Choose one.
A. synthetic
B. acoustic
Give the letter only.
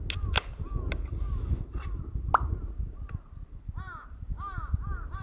B